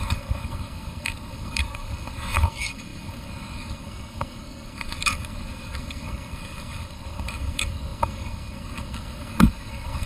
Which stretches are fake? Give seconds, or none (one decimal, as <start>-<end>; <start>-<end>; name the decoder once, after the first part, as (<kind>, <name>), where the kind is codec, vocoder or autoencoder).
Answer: 0.0-10.1 (codec, SNAC)